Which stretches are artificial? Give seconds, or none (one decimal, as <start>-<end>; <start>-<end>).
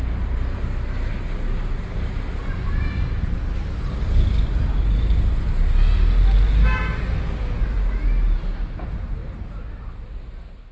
none